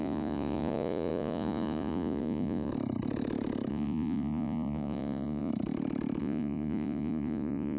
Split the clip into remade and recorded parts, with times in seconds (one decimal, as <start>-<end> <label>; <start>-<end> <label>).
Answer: 0.0-2.7 remade; 2.7-3.7 recorded; 3.7-5.5 remade; 5.5-6.2 recorded; 6.2-7.8 remade